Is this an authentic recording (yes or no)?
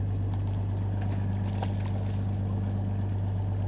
yes